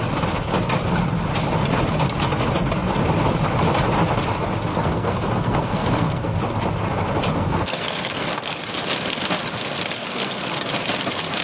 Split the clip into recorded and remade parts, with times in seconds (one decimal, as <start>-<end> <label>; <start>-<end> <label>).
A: 0.0-4.7 recorded; 4.7-6.4 remade; 6.4-7.3 recorded; 7.3-8.6 remade; 8.6-10.0 recorded; 10.0-10.7 remade; 10.7-11.4 recorded